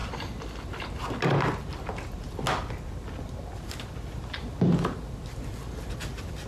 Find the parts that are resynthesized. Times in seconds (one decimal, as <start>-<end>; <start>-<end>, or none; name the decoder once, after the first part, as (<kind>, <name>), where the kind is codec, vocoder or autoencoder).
none

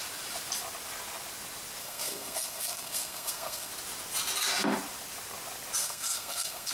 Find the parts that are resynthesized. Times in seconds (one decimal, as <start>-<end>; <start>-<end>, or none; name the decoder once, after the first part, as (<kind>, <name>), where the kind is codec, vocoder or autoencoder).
1.8-3.7 (codec, SNAC); 5.8-6.7

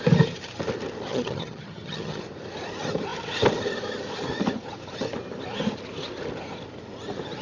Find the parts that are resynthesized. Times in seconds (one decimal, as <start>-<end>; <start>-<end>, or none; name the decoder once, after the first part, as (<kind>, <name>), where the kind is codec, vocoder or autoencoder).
1.1-2.2 (vocoder, HiFi-GAN)

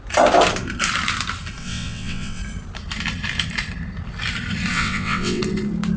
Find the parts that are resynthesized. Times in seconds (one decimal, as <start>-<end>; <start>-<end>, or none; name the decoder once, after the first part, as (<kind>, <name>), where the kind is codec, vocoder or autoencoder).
1.6-2.4 (vocoder, WaveNeXt); 4.7-5.4

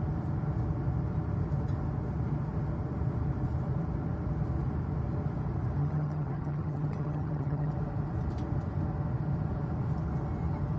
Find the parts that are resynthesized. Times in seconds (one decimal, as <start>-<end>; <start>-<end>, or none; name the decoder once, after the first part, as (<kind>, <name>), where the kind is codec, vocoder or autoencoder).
5.8-7.7 (vocoder, HiFi-GAN)